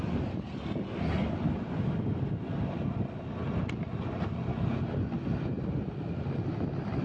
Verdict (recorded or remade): recorded